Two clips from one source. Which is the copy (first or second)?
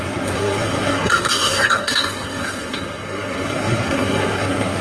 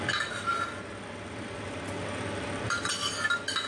first